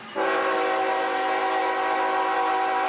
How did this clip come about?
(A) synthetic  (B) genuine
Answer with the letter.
B